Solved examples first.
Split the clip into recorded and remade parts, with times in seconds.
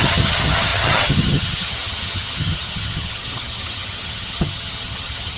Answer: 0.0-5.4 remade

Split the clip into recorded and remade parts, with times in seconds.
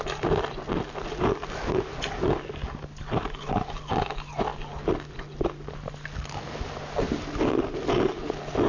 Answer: 0.0-8.7 recorded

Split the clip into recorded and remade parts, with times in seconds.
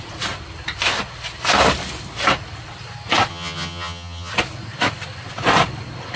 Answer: 0.0-3.3 recorded; 3.3-4.3 remade; 4.3-6.2 recorded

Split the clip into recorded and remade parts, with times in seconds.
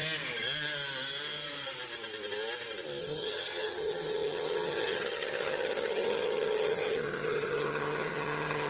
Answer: 0.0-3.0 recorded; 3.0-8.7 remade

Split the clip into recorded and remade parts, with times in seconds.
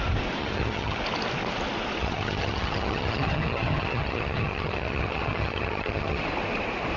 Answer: 0.0-0.4 recorded; 0.4-1.0 remade; 1.0-2.0 recorded; 2.0-6.2 remade; 6.2-7.0 recorded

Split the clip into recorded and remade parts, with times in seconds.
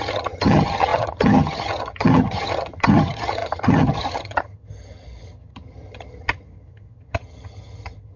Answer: 0.0-8.2 remade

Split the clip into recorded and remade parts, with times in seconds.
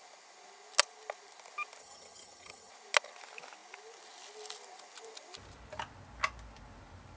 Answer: 0.0-1.8 recorded; 1.8-2.7 remade; 2.7-7.2 recorded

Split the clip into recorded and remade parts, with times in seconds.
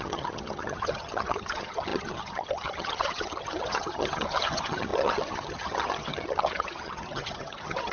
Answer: 0.0-7.9 remade